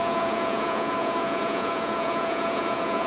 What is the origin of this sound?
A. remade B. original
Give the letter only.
A